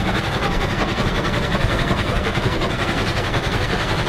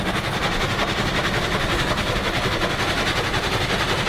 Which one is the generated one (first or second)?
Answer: first